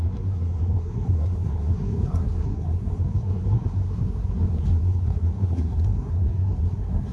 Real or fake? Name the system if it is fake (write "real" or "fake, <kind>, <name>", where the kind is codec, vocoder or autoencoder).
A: fake, codec, SNAC